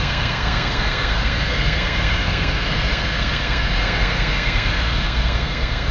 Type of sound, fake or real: fake